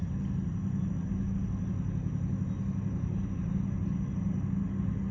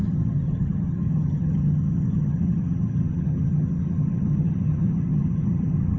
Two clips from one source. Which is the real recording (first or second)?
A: first